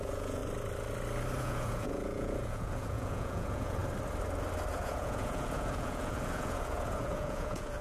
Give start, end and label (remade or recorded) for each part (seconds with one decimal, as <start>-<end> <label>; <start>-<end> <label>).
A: 0.0-0.4 remade; 0.4-1.4 recorded; 1.4-3.8 remade; 3.8-4.7 recorded; 4.7-7.8 remade